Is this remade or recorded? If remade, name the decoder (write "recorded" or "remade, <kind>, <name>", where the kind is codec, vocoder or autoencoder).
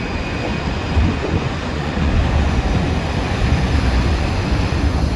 remade, vocoder, Vocos